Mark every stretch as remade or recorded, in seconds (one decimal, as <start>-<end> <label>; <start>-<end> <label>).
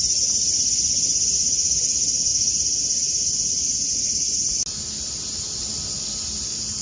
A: 0.0-6.8 recorded